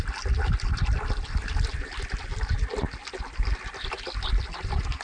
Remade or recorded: recorded